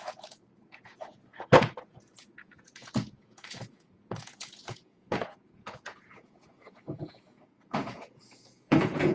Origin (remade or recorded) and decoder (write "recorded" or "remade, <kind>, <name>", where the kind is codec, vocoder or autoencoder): remade, vocoder, Vocos